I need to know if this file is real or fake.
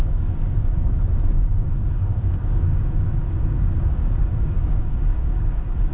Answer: fake